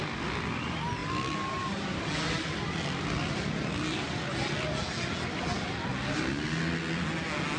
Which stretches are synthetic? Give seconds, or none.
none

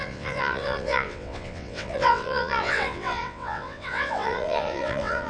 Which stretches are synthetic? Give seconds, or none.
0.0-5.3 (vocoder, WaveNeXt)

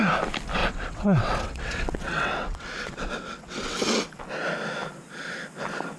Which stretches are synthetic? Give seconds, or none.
0.6-4.2 (vocoder, WaveNeXt)

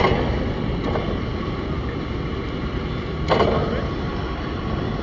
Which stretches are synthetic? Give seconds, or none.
none

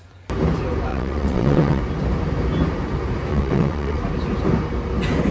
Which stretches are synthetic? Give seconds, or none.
0.9-1.8 (vocoder, WaveNeXt); 3.3-4.0